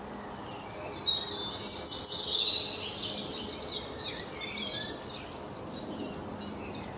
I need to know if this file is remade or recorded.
recorded